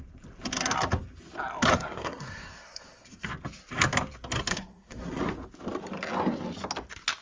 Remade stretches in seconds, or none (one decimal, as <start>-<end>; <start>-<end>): 1.7-3.3; 4.5-5.2